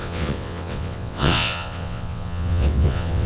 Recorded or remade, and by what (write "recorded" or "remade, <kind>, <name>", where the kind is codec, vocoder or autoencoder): remade, vocoder, WaveNeXt